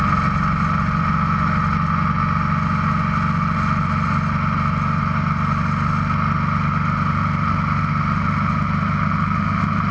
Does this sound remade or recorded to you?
recorded